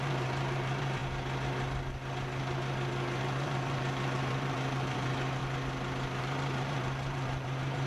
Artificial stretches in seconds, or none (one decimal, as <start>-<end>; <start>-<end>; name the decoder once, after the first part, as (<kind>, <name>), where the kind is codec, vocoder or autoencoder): 0.0-1.0 (vocoder, BigVGAN v2); 3.2-5.4; 6.2-7.9